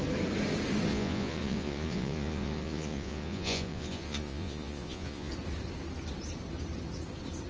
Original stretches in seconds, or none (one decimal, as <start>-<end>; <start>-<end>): 0.0-0.9; 5.3-7.5